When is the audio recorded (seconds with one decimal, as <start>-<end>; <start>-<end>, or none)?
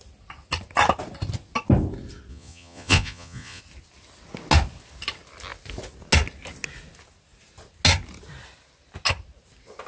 0.0-2.3; 3.6-9.9